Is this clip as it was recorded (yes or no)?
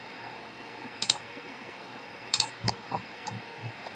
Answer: no